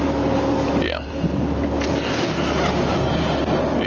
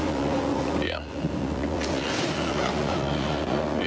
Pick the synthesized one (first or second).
second